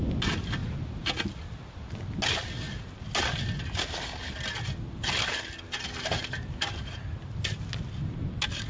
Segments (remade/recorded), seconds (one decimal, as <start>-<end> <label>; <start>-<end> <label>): 0.0-6.0 recorded; 6.0-7.0 remade; 7.0-8.7 recorded